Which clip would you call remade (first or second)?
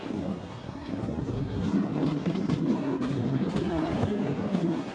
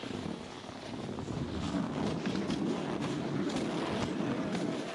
first